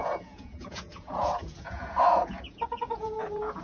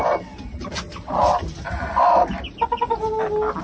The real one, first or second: second